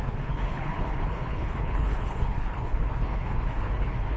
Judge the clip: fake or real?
fake